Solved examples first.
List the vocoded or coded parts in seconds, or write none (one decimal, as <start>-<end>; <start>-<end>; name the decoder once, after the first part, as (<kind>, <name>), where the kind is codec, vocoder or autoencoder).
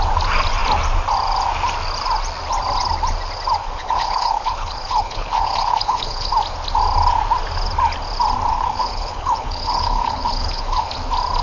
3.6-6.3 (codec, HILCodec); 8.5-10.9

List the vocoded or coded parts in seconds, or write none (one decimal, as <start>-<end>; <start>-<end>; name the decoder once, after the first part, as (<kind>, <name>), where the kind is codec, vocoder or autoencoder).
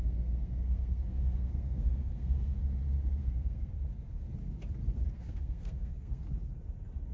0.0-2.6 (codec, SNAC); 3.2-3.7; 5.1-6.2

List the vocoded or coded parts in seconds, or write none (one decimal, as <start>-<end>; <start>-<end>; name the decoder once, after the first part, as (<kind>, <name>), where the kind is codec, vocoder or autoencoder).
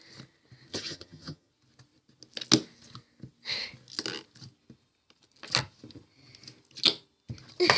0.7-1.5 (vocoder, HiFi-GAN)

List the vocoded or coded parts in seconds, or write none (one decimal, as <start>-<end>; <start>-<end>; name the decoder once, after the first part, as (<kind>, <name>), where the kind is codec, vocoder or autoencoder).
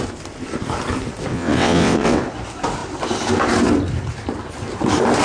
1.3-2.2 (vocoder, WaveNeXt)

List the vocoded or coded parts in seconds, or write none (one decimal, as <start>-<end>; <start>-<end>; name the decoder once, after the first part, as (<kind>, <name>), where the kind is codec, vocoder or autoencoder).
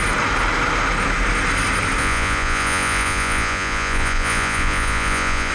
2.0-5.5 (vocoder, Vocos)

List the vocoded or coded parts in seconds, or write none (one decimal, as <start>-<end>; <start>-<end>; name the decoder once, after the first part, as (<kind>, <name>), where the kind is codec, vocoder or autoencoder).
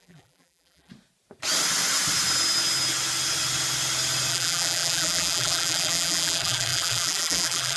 0.0-0.9 (vocoder, BigVGAN v2); 4.3-7.8